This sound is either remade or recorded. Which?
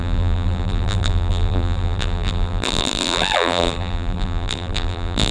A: remade